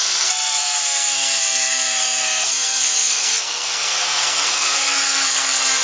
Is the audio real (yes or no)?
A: no